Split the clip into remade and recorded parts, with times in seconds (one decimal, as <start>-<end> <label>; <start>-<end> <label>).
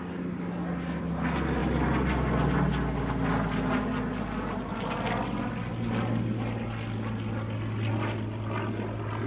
0.0-9.3 recorded